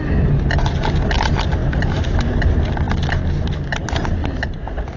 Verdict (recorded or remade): recorded